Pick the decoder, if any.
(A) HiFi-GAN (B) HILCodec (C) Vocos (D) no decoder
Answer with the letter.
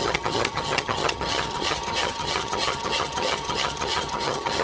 A